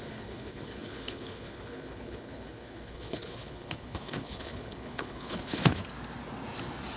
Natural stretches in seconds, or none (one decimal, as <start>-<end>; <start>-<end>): 5.8-7.0